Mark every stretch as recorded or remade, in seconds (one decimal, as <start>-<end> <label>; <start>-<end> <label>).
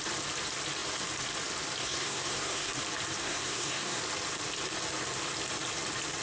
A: 0.0-1.8 recorded; 1.8-2.7 remade; 2.7-3.2 recorded; 3.2-4.0 remade; 4.0-6.2 recorded